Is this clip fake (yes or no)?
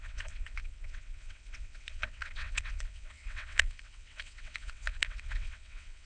yes